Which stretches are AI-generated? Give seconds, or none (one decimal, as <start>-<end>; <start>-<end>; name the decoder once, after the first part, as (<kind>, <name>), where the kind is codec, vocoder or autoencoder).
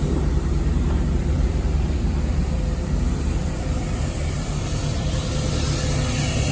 1.2-5.1 (vocoder, BigVGAN v2)